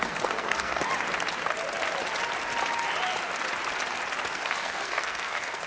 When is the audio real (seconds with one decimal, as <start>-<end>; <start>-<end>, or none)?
0.9-4.3